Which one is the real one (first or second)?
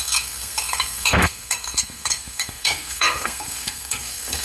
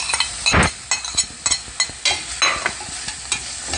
second